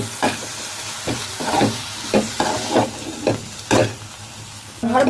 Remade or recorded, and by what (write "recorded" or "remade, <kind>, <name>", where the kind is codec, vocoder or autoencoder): recorded